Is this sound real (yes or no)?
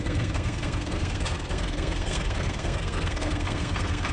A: no